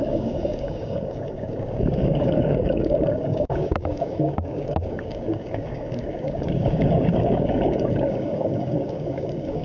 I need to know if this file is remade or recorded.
remade